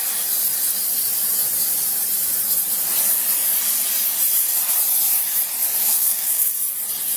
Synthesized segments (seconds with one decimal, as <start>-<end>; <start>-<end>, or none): 5.8-6.5